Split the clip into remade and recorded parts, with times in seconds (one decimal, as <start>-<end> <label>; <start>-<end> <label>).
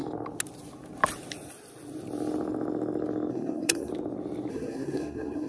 0.0-3.3 recorded; 3.3-3.9 remade; 3.9-4.5 recorded; 4.5-5.5 remade